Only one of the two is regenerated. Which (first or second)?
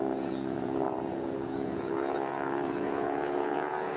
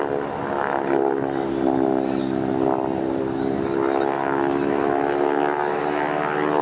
first